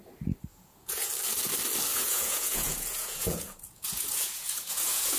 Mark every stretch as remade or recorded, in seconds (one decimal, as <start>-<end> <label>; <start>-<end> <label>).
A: 0.0-0.5 recorded; 0.5-1.1 remade; 1.1-1.9 recorded; 1.9-5.2 remade